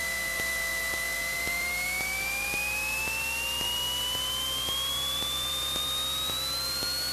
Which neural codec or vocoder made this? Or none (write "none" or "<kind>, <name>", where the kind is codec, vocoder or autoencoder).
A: none